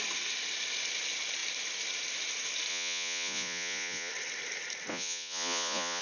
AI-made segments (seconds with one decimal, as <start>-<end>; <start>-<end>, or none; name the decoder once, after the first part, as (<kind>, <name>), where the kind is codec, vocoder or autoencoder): 2.7-4.1 (vocoder, Vocos); 4.9-6.0